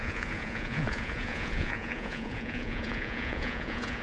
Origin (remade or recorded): remade